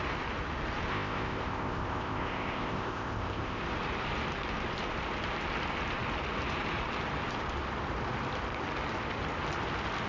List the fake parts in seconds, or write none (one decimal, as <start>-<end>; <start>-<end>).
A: 0.9-3.6